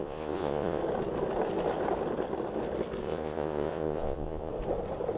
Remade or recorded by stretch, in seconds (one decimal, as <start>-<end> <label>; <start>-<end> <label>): 0.0-0.8 remade; 0.8-3.0 recorded; 3.0-4.5 remade; 4.5-5.2 recorded